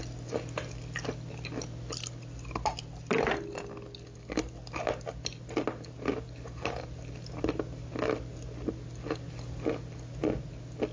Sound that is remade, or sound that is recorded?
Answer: recorded